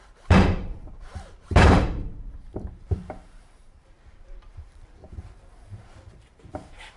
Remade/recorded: remade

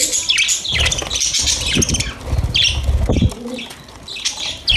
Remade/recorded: recorded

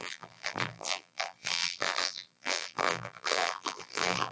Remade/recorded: remade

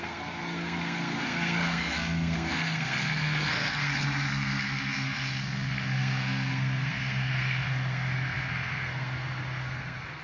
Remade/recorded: remade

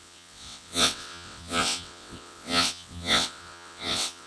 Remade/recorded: remade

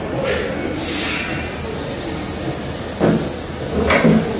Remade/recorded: recorded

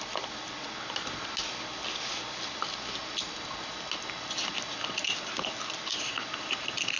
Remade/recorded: recorded